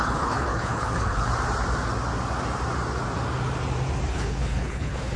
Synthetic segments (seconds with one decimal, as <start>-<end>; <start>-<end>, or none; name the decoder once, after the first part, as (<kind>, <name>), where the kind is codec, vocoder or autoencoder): 0.0-1.3 (codec, HILCodec); 4.1-5.2